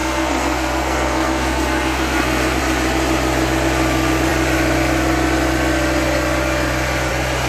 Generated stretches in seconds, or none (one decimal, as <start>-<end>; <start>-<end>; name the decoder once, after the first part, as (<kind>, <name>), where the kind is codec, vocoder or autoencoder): 0.0-2.6 (codec, SNAC)